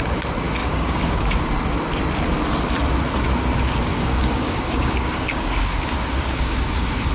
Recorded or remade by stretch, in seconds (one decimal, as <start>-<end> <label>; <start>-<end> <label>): 0.0-0.6 recorded; 0.6-1.4 remade; 1.4-3.9 recorded; 3.9-7.1 remade